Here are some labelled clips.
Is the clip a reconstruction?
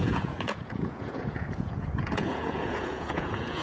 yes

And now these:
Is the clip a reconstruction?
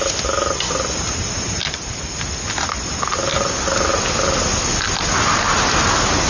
no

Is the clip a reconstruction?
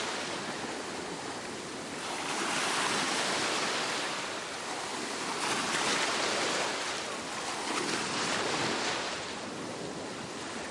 no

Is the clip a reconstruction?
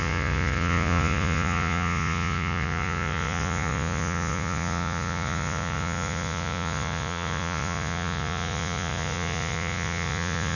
yes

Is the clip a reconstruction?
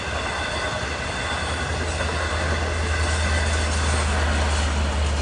no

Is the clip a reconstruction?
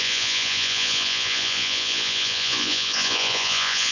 yes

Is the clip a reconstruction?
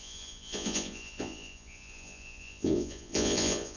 yes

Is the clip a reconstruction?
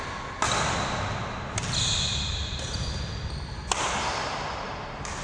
no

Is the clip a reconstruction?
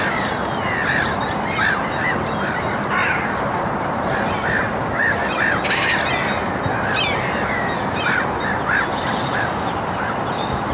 no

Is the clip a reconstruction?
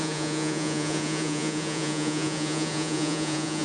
yes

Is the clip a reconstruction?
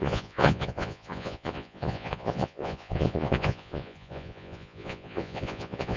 yes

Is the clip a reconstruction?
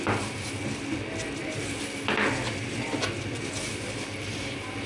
no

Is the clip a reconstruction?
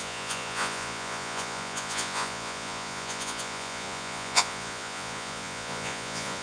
yes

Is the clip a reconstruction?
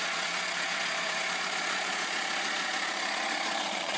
yes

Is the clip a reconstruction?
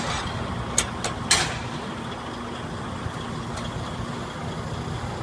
no